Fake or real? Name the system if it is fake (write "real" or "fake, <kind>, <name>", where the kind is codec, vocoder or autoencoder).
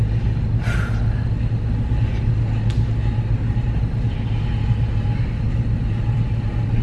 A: real